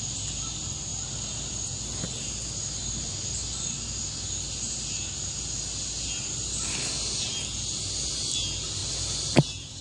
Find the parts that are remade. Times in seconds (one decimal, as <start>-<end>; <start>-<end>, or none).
8.8-9.8